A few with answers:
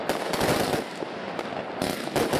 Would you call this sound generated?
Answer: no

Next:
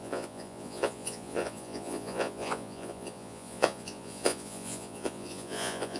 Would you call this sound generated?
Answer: yes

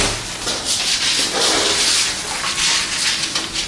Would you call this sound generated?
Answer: no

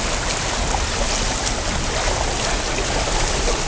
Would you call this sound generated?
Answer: no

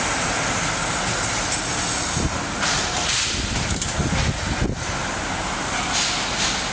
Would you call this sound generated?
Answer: no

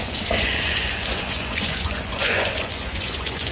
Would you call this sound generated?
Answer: yes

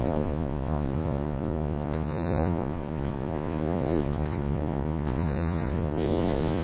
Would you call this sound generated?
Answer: yes